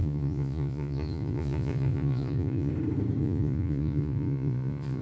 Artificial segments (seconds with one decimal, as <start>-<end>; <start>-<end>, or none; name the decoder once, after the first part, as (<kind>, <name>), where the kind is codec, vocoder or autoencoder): 0.0-2.7 (vocoder, Vocos); 3.2-5.0